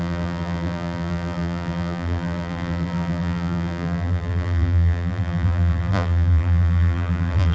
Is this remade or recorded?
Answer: remade